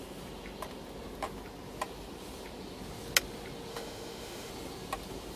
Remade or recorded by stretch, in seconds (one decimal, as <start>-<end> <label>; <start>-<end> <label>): 0.0-3.7 recorded; 3.7-4.5 remade; 4.5-5.4 recorded